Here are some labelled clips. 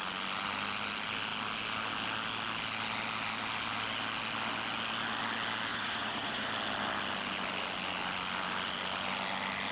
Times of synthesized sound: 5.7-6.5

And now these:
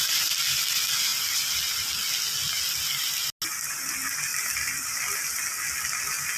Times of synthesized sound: none

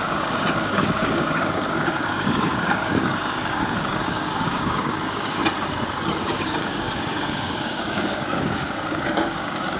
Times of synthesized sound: 0.0-5.4; 6.2-9.8

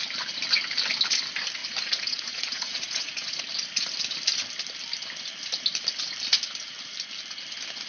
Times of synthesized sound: 1.6-3.4

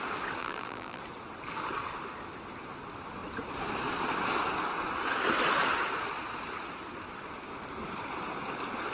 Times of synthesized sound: 0.4-1.0

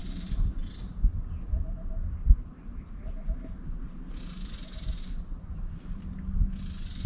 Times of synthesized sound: none

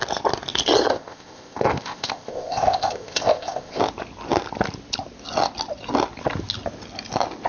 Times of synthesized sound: 0.9-3.8

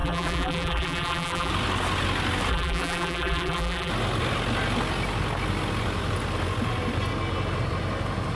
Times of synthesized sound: 0.0-1.5; 2.5-3.9